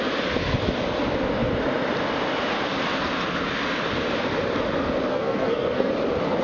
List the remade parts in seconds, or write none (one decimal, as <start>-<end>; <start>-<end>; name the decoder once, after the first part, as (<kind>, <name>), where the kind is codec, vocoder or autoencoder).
5.1-5.9 (codec, SNAC)